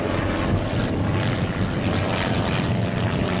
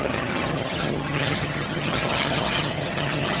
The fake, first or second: second